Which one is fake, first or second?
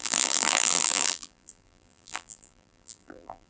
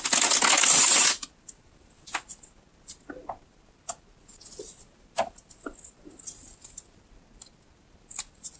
first